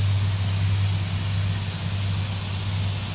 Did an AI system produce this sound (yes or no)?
no